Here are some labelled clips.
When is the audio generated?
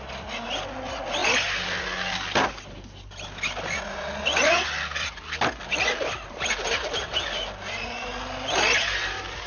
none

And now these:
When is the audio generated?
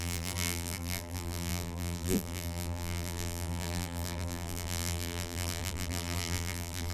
0.0-6.9